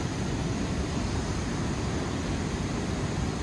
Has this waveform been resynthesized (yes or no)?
no